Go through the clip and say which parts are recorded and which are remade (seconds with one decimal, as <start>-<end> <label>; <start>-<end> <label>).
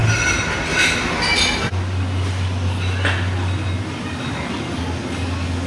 0.0-5.7 recorded